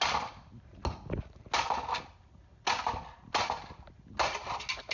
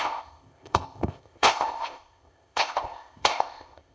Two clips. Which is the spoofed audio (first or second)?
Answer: second